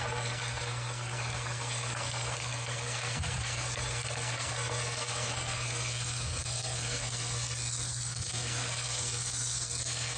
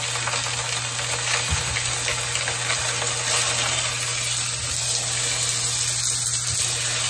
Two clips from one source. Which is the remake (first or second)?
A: first